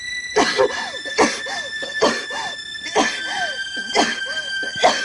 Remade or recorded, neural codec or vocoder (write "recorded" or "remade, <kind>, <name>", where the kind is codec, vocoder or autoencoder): recorded